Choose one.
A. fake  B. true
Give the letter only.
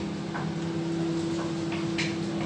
B